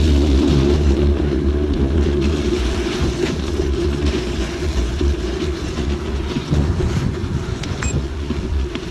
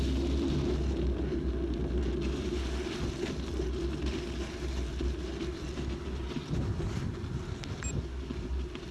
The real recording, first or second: second